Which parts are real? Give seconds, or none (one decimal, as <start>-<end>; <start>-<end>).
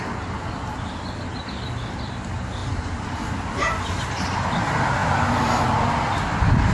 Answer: 0.0-2.6; 4.2-6.7